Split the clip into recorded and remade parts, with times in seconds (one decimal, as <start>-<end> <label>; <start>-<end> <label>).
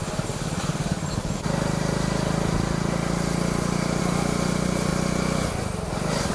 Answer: 0.0-6.3 recorded